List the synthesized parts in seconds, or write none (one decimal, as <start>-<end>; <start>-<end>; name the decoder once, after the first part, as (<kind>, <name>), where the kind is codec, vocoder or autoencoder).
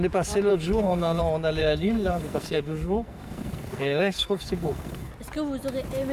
0.5-1.2 (codec, SNAC); 1.6-5.1